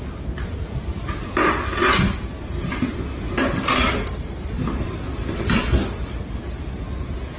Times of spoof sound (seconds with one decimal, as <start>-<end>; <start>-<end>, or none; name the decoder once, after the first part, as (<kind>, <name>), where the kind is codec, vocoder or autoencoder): none